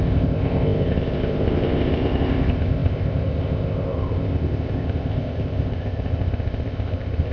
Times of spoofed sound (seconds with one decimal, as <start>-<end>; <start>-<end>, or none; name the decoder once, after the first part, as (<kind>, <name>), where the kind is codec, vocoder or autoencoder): 0.0-7.3 (codec, ZipCodec)

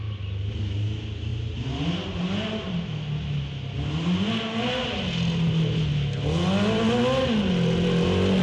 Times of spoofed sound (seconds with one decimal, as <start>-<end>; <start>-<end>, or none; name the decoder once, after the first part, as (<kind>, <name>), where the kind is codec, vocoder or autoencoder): none

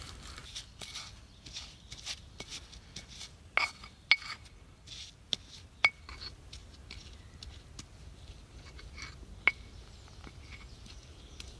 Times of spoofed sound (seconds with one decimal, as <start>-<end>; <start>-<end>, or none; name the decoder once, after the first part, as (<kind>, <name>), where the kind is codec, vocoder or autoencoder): none

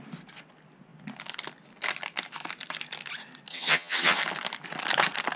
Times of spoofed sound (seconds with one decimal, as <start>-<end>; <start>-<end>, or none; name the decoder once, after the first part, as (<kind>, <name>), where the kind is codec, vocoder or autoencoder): 3.5-4.2 (vocoder, HiFi-GAN)